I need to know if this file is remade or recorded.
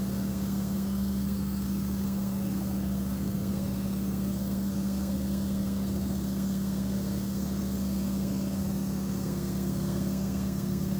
remade